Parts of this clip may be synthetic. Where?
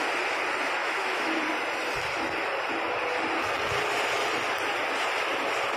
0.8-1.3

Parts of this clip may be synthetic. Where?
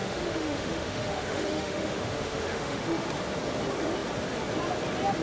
0.0-3.1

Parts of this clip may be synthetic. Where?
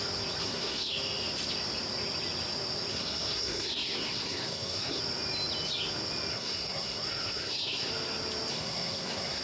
0.4-0.9; 2.9-5.0; 6.3-7.9; 8.5-9.4